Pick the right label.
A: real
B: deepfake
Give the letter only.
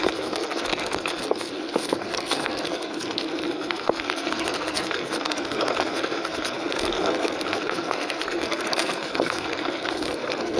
B